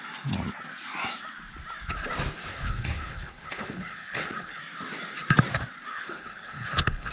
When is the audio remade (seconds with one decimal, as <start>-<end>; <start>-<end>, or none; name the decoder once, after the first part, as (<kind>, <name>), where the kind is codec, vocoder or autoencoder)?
2.5-4.6 (codec, HILCodec); 5.9-7.1